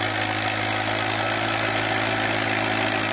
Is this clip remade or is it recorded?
recorded